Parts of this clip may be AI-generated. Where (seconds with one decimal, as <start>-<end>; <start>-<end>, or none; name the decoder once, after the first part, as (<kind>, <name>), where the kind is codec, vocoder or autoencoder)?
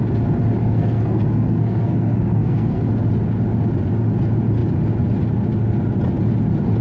0.6-2.9 (codec, SNAC)